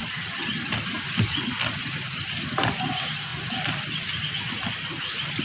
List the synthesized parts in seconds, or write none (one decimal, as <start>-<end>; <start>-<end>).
3.3-5.0